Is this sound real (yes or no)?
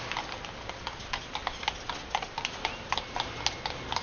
yes